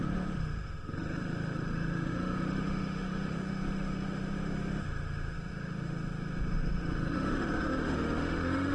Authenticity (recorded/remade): remade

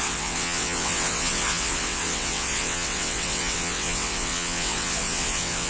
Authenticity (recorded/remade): remade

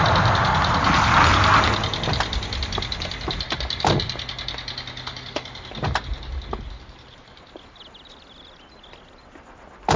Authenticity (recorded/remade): recorded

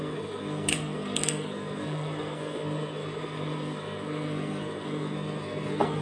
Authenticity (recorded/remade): remade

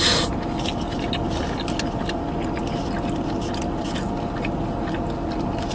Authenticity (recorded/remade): recorded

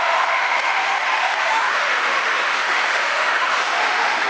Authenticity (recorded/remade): remade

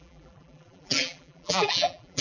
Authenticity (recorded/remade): remade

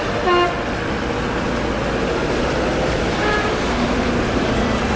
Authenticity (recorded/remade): recorded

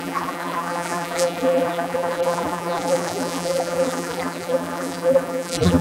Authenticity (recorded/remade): remade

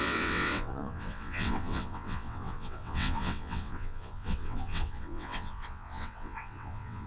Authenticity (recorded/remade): remade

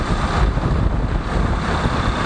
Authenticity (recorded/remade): recorded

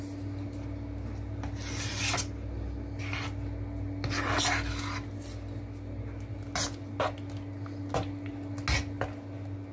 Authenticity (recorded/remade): recorded